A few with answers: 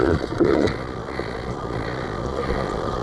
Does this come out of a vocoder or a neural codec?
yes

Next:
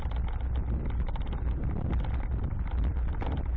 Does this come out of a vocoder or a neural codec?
no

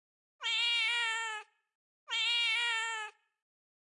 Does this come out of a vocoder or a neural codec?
no